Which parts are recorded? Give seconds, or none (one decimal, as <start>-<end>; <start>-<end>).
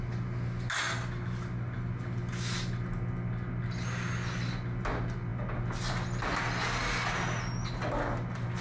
0.0-8.6